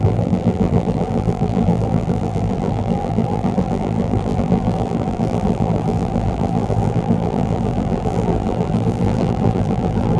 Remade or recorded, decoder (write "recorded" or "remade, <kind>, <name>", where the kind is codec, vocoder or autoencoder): remade, vocoder, BigVGAN v2